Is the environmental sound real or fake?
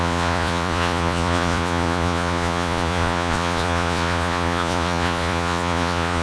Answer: fake